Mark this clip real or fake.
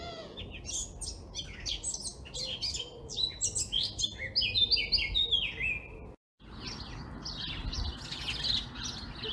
real